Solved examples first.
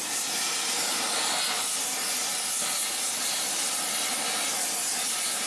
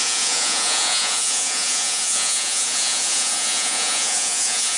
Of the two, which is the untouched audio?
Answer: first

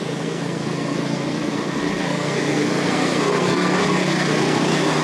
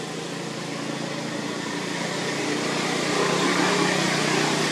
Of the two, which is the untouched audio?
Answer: second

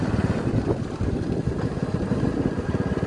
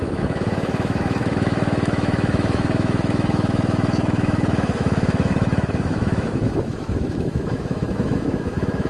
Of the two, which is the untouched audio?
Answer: first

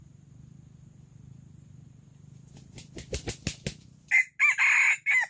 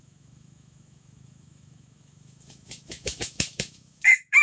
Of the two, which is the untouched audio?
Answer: first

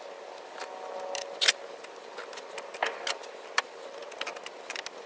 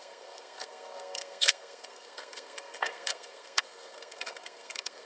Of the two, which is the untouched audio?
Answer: first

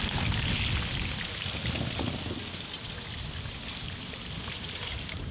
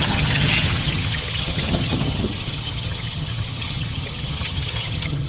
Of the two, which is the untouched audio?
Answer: first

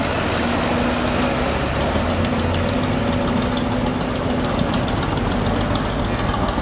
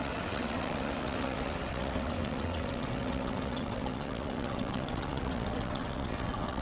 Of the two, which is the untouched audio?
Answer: first